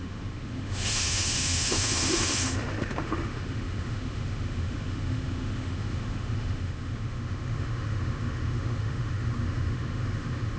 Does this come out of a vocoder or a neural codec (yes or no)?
yes